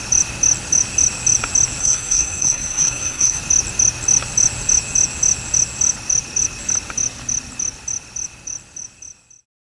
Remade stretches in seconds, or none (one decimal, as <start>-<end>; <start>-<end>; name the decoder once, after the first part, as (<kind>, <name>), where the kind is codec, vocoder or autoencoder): 1.8-3.4 (codec, SNAC)